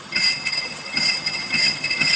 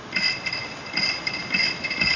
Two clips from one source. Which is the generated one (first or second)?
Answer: first